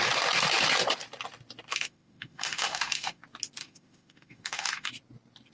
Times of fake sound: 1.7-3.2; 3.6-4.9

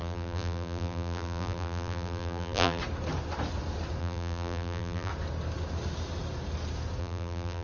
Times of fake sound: 0.0-2.8; 4.0-5.1; 7.0-7.6

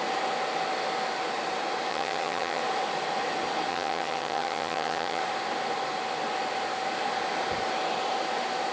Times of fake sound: 1.9-2.6; 3.7-5.2

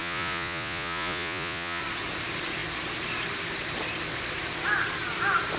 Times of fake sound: 0.0-1.8